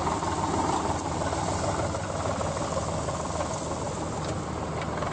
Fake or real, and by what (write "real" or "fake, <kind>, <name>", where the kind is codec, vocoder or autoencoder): real